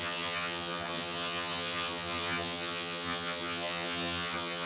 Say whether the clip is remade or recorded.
remade